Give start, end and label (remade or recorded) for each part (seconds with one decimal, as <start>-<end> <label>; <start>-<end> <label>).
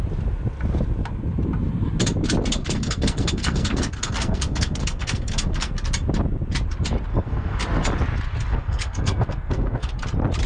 0.0-2.5 recorded; 2.5-5.7 remade; 5.7-7.1 recorded; 7.1-7.6 remade; 7.6-8.5 recorded; 8.5-9.9 remade; 9.9-10.5 recorded